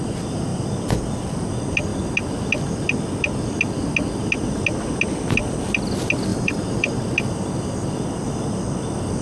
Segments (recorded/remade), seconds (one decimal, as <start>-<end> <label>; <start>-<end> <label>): 0.0-6.3 recorded; 6.3-6.9 remade; 6.9-9.2 recorded